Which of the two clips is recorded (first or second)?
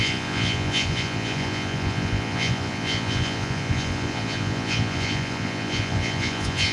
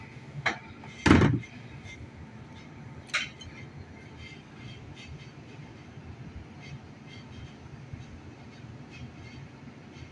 second